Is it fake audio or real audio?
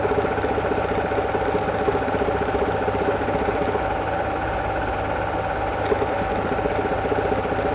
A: real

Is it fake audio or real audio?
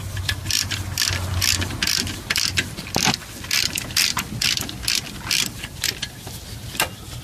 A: real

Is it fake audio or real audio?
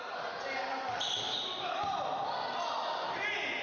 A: real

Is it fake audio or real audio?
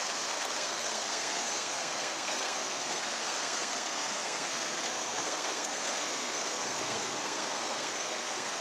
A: fake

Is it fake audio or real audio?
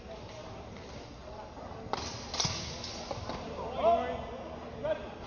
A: real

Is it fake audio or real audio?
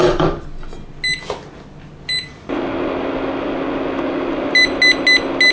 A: real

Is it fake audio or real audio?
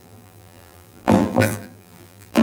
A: fake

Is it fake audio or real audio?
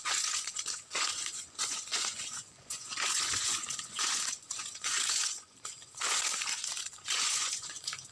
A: fake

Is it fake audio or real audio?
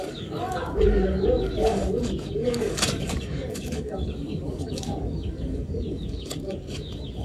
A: fake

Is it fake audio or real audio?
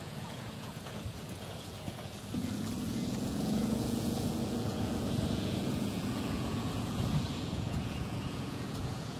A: fake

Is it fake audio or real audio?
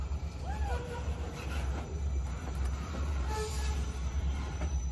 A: fake